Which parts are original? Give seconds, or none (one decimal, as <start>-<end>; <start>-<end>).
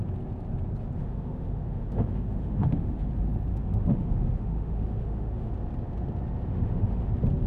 0.0-1.0; 3.1-3.5; 5.5-6.5; 7.1-7.5